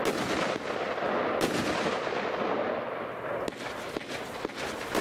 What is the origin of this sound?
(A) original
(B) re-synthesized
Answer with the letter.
A